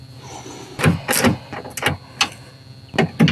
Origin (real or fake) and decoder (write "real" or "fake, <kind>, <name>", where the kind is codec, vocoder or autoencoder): real